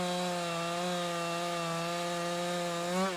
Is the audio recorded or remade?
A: recorded